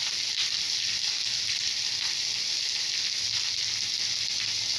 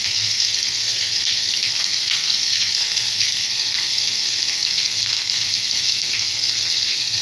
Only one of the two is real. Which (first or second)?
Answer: first